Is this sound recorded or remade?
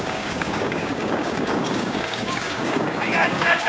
remade